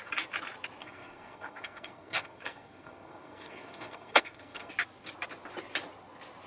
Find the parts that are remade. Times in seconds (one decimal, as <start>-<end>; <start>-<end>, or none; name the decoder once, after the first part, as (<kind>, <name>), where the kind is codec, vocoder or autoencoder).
0.8-4.7 (codec, SNAC)